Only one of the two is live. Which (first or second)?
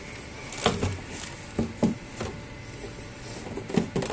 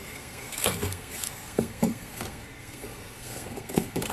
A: first